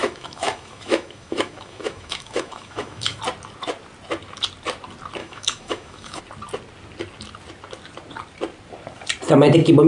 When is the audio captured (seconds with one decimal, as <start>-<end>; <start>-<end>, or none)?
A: 3.2-5.2; 6.2-9.9